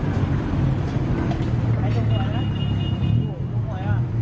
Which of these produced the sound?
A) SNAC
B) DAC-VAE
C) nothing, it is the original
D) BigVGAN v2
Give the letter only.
C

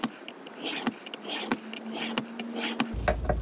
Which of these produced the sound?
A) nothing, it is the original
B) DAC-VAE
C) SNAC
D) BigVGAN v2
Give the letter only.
A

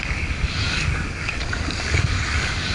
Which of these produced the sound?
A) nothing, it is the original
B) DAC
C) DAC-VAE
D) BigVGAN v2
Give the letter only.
B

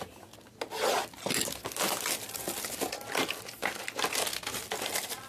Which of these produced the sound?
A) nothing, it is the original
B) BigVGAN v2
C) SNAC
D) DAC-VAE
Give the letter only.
A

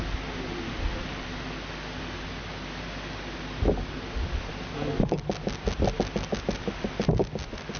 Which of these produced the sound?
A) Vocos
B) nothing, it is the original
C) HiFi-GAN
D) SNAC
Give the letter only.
B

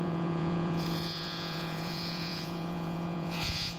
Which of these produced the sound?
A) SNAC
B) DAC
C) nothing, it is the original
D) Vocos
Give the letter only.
D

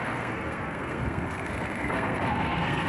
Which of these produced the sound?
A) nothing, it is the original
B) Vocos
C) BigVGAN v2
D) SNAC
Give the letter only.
D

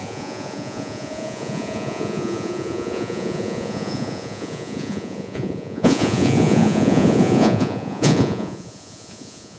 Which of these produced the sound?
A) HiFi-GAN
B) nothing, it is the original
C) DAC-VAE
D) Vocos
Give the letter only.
D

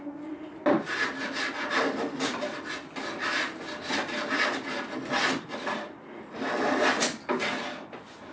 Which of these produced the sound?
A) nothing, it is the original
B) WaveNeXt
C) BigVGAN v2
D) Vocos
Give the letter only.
A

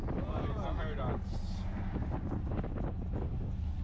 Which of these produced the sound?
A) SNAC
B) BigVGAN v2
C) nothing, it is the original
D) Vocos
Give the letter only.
C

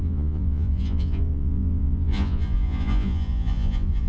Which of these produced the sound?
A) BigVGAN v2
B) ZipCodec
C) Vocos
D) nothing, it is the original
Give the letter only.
C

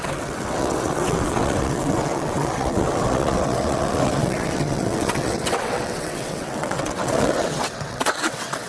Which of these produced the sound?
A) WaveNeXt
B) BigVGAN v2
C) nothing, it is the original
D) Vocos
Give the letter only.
A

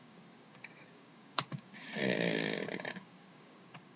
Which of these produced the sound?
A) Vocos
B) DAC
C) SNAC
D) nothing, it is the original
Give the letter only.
B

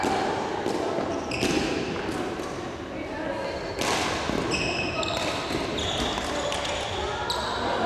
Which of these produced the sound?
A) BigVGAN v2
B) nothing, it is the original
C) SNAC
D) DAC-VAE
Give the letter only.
B